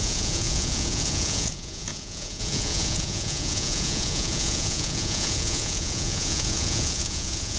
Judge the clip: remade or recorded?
remade